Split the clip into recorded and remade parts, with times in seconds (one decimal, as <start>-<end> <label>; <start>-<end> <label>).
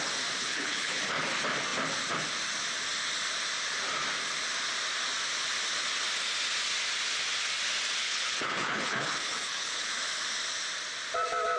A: 0.0-0.4 recorded; 0.4-1.0 remade; 1.0-8.0 recorded; 8.0-9.9 remade; 9.9-11.6 recorded